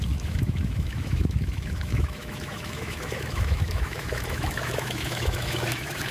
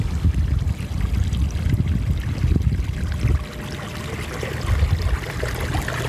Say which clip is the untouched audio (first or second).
second